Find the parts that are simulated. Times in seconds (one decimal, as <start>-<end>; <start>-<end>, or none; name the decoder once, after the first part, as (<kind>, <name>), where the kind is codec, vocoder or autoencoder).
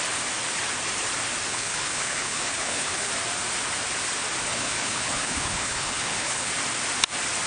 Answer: 1.5-3.1 (codec, HILCodec); 4.5-6.5